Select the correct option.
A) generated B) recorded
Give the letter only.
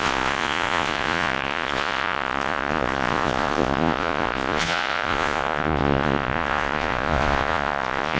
A